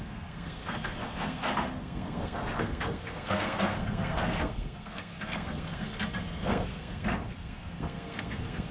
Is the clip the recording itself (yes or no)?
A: no